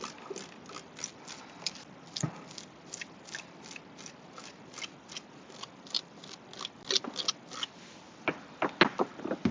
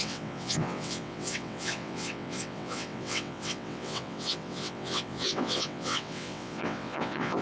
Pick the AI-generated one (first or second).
second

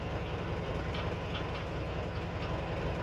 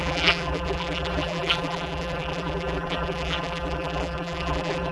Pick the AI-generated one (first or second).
second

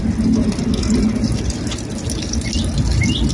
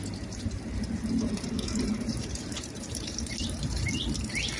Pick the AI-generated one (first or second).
second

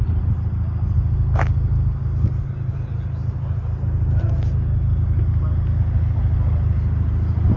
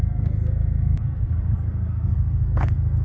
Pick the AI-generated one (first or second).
second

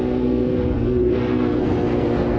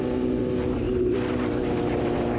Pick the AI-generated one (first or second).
first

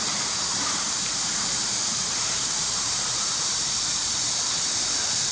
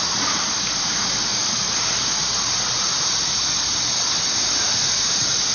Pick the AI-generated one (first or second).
first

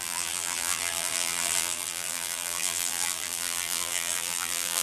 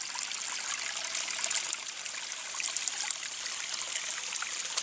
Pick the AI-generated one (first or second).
first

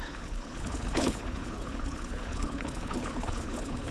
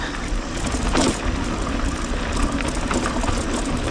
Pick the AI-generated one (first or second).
first